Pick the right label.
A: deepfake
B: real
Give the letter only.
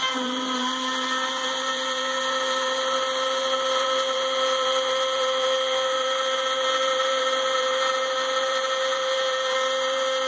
A